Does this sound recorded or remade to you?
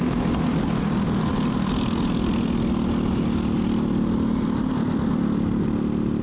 recorded